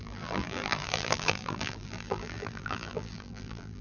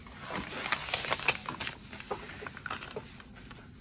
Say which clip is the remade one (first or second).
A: first